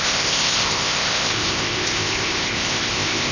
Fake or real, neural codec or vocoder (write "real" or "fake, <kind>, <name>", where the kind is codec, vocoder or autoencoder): fake, codec, ZipCodec